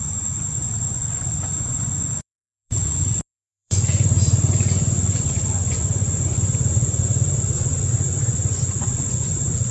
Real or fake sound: fake